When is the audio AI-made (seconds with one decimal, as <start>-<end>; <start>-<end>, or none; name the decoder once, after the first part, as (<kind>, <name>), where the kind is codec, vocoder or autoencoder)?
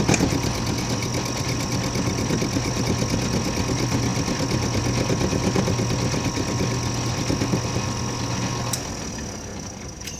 none